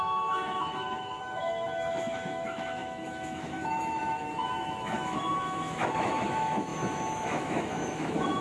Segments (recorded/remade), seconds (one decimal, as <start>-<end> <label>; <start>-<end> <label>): 0.0-8.4 remade